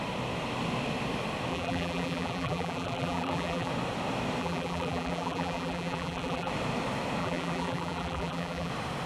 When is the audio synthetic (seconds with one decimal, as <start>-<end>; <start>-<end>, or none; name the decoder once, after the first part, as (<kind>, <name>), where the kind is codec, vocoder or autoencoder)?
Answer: 1.5-3.7 (vocoder, BigVGAN v2); 4.4-6.5; 7.2-8.7